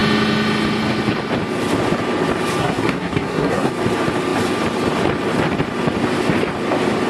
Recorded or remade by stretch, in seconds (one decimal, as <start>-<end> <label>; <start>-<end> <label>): 0.0-2.6 recorded; 2.6-3.7 remade; 3.7-7.1 recorded